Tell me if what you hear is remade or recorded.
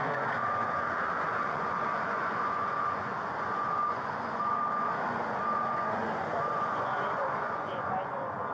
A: remade